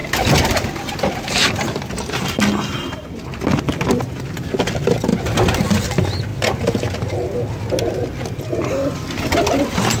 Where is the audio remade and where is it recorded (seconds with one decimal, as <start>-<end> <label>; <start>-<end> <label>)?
0.0-10.0 recorded